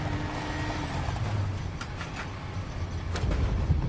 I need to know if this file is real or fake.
real